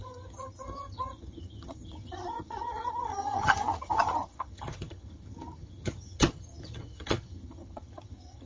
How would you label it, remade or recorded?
remade